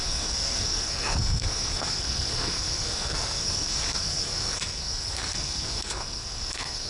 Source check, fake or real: fake